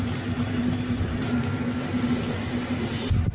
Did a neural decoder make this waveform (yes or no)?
no